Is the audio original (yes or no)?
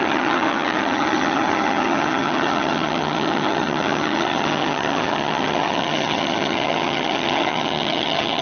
no